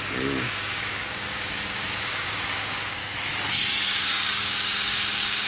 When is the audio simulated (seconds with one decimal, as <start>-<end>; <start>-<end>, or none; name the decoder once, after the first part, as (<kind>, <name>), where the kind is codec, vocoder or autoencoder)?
0.0-3.0 (codec, DAC); 3.7-5.5

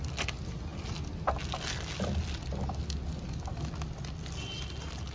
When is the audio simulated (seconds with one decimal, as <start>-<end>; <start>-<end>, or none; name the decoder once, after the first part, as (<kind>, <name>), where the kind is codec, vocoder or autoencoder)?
none

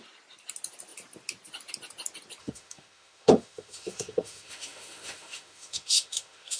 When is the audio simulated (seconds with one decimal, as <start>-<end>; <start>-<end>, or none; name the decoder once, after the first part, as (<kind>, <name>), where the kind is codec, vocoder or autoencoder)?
2.4-6.6 (autoencoder, DAC-VAE)

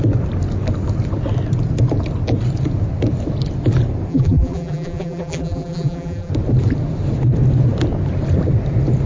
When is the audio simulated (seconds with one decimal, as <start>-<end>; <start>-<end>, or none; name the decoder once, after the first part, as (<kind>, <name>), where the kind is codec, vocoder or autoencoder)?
4.1-6.3 (vocoder, BigVGAN v2)

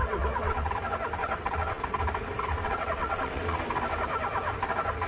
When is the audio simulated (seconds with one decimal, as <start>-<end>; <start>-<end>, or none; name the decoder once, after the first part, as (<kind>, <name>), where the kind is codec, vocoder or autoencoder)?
0.0-0.7 (vocoder, WaveNeXt); 1.2-1.8; 2.6-3.6

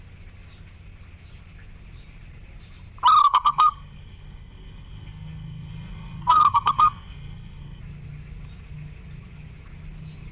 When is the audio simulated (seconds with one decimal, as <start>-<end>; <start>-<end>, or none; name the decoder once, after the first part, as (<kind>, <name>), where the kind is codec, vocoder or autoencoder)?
3.2-7.8 (codec, SNAC)